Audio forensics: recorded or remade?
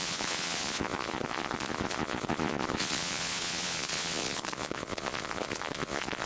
remade